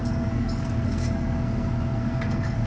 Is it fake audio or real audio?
fake